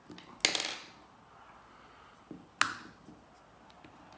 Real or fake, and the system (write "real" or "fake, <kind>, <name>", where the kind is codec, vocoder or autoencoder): real